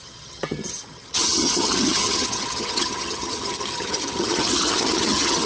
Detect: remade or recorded remade